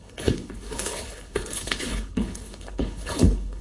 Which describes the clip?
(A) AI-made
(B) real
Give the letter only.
A